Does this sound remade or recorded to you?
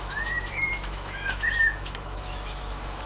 remade